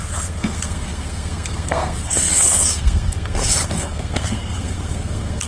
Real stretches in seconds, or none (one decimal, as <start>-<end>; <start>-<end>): none

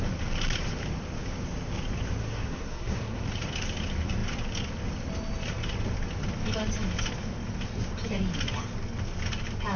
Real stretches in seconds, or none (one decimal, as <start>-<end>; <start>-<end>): 0.0-2.2; 3.2-9.8

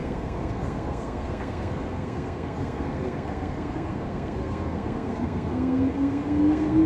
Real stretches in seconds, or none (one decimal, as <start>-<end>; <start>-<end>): none

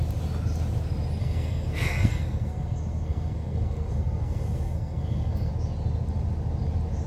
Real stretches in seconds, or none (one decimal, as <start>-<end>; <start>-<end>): 0.0-1.2; 5.5-7.1

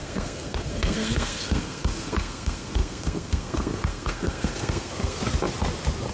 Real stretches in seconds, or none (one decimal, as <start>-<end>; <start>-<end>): 5.2-6.1

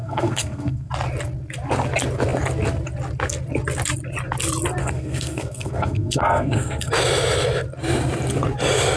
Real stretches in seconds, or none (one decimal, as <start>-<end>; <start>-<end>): 0.9-4.8; 6.9-9.0